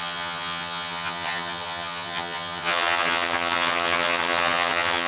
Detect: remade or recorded remade